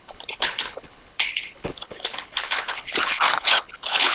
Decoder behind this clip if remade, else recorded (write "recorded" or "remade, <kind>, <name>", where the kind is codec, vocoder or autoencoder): remade, codec, HILCodec